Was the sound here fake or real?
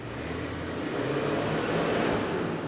real